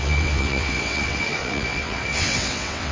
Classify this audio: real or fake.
fake